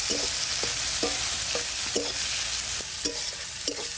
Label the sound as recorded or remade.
recorded